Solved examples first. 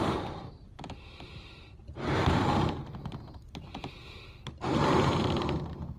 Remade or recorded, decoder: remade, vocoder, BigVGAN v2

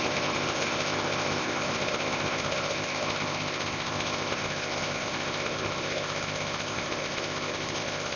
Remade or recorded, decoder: remade, codec, ZipCodec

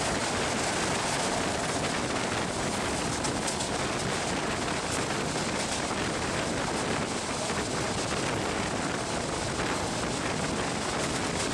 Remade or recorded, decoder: recorded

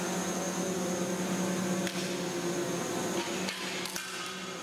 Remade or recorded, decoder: recorded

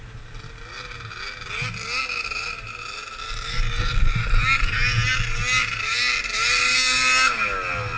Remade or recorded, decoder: recorded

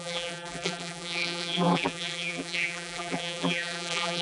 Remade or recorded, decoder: remade, vocoder, BigVGAN v2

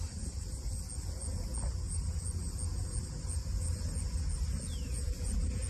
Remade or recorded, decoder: recorded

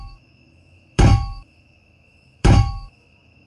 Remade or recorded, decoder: remade, autoencoder, DAC-VAE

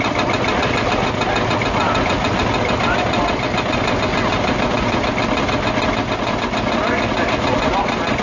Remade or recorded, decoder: recorded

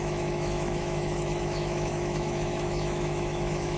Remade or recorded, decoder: remade, autoencoder, DAC-VAE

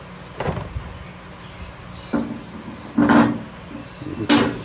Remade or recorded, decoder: recorded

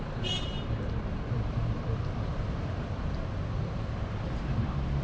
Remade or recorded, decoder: remade, vocoder, BigVGAN v2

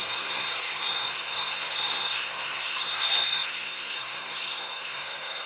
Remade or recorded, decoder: remade, codec, SNAC